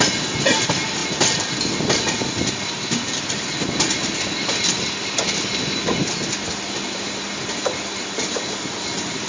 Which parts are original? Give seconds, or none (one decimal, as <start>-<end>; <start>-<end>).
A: 0.0-9.3